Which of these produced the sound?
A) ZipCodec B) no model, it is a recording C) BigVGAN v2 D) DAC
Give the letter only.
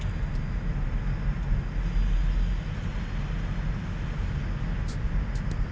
B